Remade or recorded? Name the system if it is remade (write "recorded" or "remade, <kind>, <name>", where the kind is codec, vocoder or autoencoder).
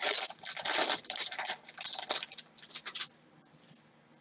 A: remade, vocoder, BigVGAN v2